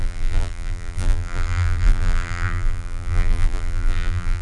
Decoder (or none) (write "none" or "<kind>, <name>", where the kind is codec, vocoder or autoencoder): vocoder, BigVGAN v2